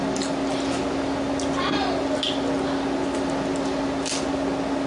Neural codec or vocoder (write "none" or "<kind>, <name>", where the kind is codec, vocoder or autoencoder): none